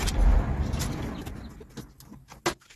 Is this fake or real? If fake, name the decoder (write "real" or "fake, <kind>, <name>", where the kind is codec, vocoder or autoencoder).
real